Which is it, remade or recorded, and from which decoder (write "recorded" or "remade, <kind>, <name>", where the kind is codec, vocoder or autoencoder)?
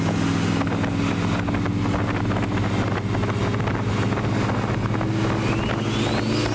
recorded